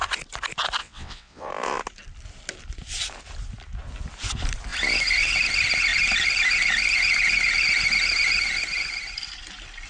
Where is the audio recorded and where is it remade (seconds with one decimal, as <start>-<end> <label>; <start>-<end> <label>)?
0.0-0.8 recorded; 0.8-1.5 remade; 1.5-9.9 recorded